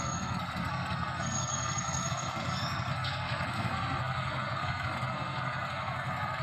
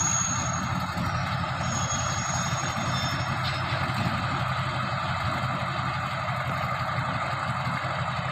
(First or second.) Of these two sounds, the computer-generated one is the first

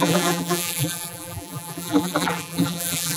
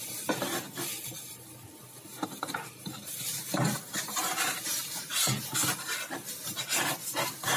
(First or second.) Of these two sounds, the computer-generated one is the first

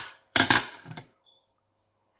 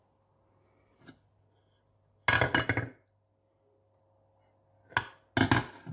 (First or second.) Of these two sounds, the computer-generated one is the first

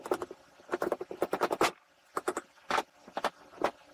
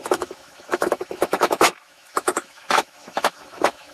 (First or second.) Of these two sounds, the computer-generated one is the second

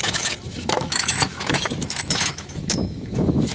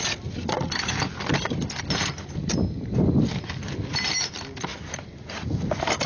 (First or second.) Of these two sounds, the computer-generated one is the first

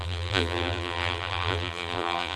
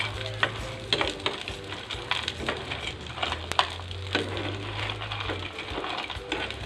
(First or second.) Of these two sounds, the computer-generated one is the first